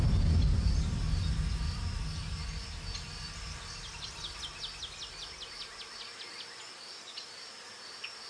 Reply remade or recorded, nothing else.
recorded